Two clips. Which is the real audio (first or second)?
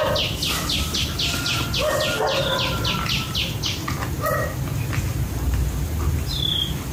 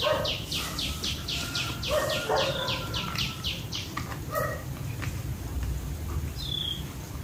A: first